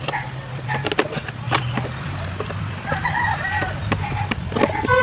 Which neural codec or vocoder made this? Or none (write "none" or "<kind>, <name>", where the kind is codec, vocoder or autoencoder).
vocoder, BigVGAN v2